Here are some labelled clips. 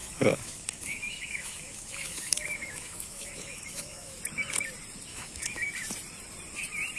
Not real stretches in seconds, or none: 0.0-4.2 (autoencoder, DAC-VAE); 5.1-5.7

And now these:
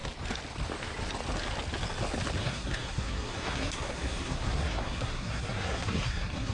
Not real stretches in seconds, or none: 2.4-6.5 (codec, SNAC)